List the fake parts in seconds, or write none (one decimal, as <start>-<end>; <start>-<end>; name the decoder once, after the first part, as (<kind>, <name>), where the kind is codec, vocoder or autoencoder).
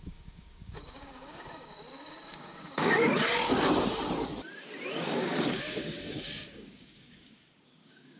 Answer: 0.0-3.1 (codec, DAC); 4.9-8.2